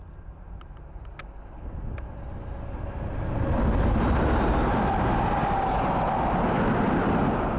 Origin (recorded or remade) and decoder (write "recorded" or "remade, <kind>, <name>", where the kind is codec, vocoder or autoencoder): recorded